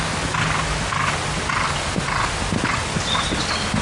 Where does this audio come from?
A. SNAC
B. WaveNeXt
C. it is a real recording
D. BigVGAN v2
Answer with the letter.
C